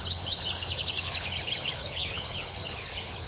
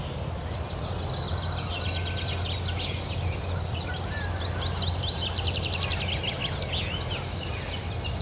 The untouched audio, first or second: second